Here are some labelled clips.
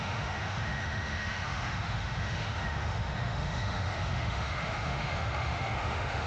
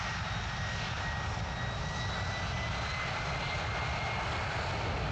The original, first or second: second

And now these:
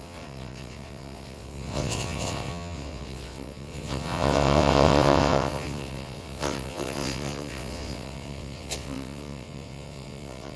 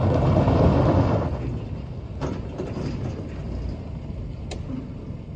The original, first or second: second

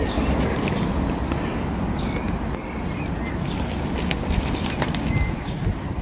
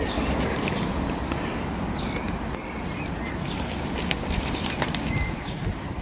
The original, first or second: first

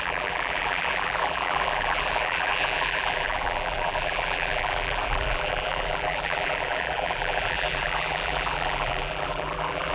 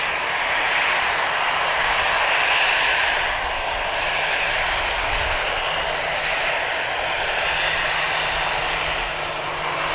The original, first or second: second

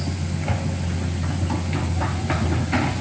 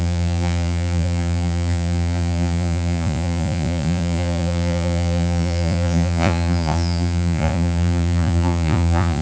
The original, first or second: first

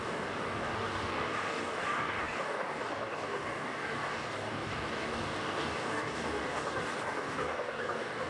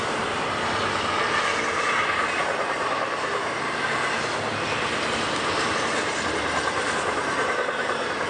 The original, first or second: second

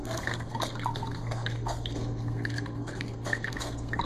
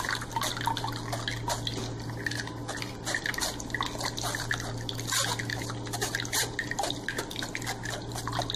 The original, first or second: second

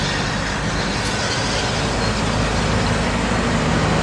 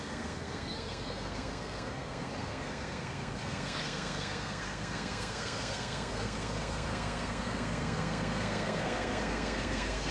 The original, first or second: first